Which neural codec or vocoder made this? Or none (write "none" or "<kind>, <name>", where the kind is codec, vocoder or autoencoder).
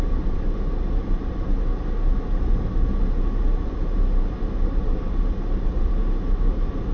none